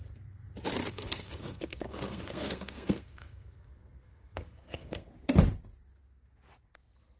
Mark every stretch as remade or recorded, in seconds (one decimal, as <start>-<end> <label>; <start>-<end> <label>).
0.0-0.8 recorded; 0.8-5.1 remade; 5.1-7.2 recorded